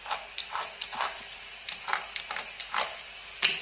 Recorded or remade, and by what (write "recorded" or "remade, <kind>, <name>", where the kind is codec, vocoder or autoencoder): recorded